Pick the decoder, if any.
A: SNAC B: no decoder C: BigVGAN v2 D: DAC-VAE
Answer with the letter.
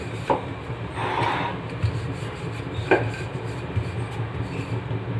B